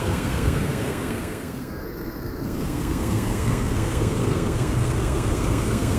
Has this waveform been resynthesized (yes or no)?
yes